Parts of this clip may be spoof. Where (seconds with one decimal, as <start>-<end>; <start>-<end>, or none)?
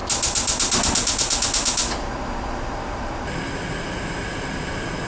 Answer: none